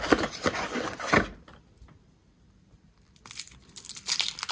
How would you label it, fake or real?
real